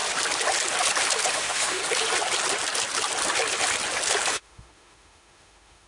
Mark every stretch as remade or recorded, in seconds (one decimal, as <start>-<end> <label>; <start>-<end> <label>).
0.0-1.3 recorded; 1.3-1.8 remade; 1.8-4.3 recorded; 4.3-5.9 remade